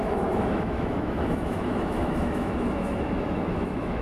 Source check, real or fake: fake